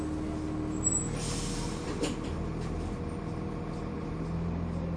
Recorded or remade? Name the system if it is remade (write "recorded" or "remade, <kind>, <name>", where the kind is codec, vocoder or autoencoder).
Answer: recorded